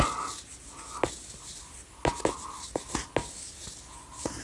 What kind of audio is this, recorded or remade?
recorded